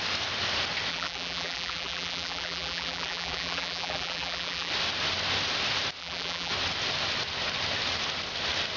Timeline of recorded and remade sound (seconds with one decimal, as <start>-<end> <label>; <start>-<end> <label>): 0.0-0.9 recorded; 0.9-4.7 remade; 4.7-6.0 recorded; 6.0-6.5 remade; 6.5-8.8 recorded